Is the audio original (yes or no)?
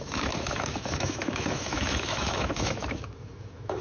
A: no